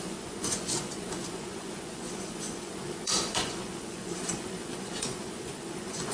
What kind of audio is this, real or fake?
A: fake